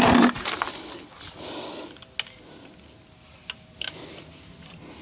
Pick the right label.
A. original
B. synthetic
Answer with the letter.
A